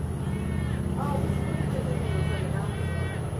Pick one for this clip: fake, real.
real